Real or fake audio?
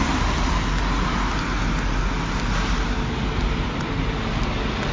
real